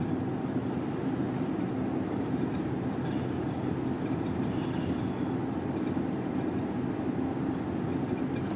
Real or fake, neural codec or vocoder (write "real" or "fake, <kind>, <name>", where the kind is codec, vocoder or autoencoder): real